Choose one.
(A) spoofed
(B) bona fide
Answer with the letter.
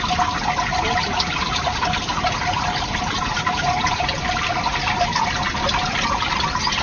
B